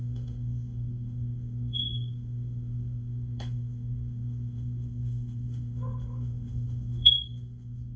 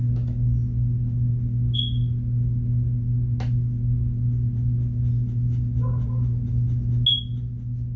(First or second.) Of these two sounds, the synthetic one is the first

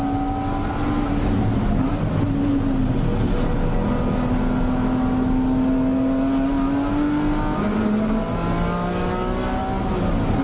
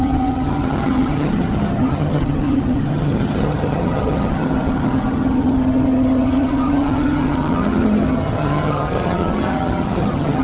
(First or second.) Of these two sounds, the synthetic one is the second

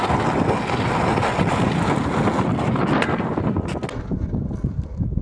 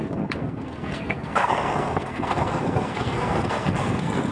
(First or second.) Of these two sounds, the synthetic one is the second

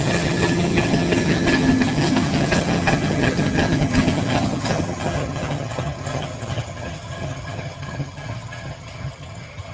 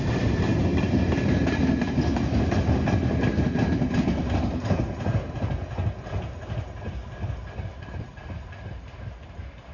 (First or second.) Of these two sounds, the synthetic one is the first